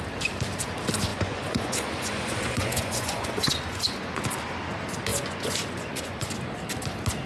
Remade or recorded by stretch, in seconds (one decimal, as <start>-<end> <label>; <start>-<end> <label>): 0.0-1.1 recorded; 1.1-4.2 remade; 4.2-5.1 recorded; 5.1-6.3 remade; 6.3-7.3 recorded